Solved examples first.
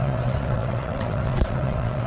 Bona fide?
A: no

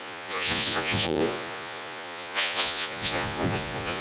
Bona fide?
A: no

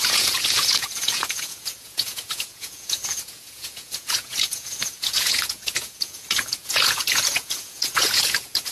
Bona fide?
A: no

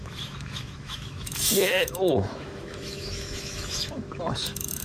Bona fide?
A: no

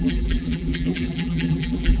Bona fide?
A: no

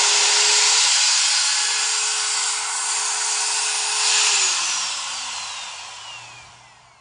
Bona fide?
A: yes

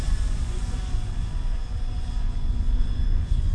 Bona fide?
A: no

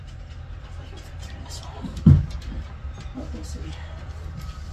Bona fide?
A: yes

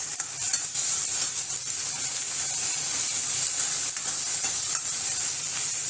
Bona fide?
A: yes